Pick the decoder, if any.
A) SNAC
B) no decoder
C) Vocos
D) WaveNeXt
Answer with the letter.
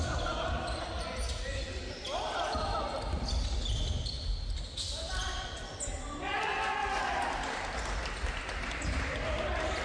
B